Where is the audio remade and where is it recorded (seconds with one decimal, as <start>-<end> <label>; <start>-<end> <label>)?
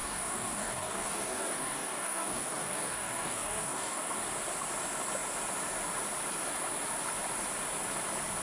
0.0-4.2 remade; 4.2-8.4 recorded